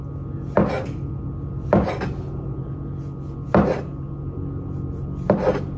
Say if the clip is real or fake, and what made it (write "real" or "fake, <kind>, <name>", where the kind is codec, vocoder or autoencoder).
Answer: real